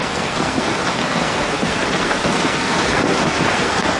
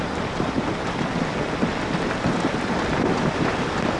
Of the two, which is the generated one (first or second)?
first